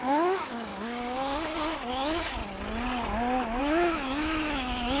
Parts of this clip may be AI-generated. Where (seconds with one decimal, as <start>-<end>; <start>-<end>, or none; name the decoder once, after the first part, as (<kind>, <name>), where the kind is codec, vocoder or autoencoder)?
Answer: 0.0-0.7 (autoencoder, DAC-VAE); 1.9-2.4; 3.6-5.0